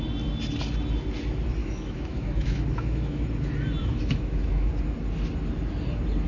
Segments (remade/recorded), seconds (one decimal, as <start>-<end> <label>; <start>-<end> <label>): 0.0-1.6 recorded; 1.6-3.2 remade; 3.2-3.8 recorded; 3.8-4.7 remade; 4.7-6.3 recorded